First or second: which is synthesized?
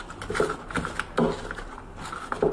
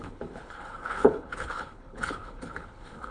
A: second